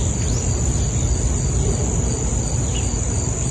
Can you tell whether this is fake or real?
real